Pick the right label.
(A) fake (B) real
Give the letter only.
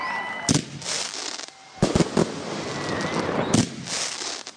B